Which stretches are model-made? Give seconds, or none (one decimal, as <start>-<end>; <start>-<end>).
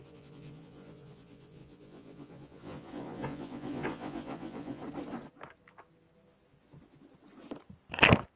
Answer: 0.0-4.8